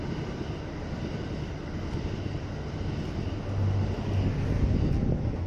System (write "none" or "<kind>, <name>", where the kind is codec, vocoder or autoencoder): none